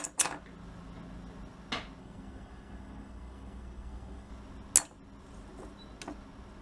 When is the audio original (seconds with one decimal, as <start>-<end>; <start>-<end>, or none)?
0.0-2.0; 4.3-6.6